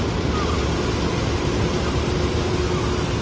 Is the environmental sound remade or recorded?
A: recorded